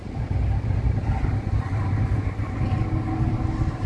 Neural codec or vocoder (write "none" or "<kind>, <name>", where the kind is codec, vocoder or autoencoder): none